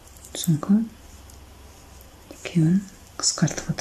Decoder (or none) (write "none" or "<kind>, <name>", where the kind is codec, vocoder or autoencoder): none